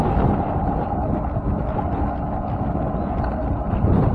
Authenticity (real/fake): real